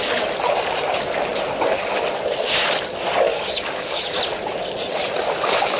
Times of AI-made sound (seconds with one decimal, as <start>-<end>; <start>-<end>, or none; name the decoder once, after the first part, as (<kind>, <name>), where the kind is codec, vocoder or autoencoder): 3.3-4.2 (codec, DAC)